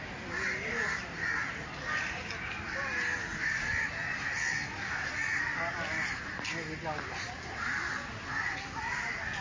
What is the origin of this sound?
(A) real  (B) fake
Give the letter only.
A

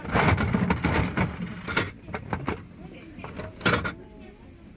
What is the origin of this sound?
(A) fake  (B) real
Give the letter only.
B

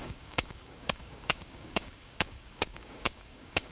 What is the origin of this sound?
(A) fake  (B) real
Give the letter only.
A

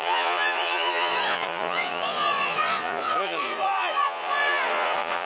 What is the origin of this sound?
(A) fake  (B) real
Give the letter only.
A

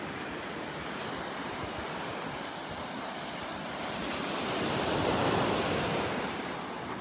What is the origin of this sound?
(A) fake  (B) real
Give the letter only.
B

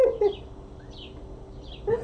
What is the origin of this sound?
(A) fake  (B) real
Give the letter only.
B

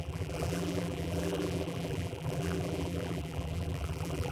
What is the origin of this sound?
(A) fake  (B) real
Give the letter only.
A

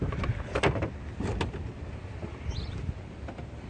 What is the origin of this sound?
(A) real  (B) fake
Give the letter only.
A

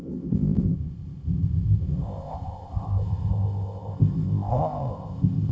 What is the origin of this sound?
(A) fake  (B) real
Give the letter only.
A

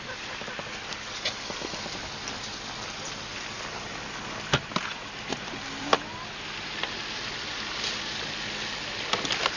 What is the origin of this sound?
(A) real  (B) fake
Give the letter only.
A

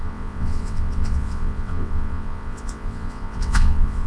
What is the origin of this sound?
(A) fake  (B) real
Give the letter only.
A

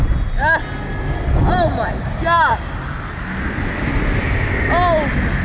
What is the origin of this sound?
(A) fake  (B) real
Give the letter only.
B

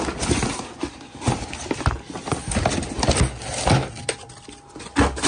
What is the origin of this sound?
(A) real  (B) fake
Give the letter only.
A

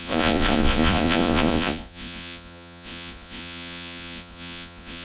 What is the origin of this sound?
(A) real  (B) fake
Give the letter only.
B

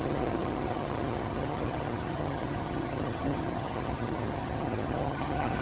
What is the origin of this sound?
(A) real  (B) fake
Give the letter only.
B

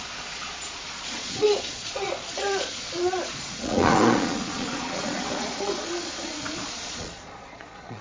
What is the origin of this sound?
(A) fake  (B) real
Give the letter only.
A